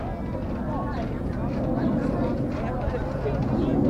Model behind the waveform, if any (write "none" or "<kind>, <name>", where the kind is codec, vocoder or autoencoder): none